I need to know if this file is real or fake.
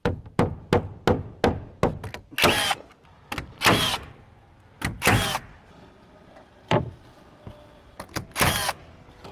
real